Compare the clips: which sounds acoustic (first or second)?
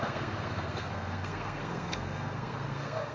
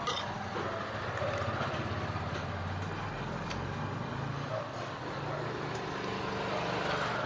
second